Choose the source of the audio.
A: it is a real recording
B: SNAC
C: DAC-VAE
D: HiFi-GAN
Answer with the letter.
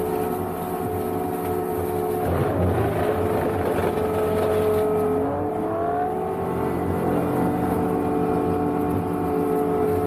A